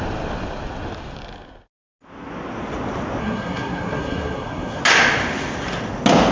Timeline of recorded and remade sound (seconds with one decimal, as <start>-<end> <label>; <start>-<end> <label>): 0.0-3.2 recorded; 3.2-4.8 remade; 4.8-6.3 recorded